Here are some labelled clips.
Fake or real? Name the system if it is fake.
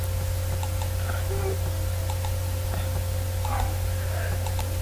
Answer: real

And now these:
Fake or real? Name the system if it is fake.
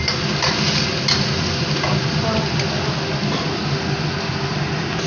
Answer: real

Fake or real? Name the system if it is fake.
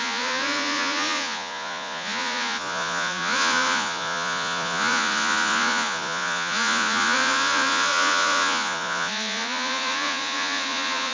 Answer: fake, vocoder, Vocos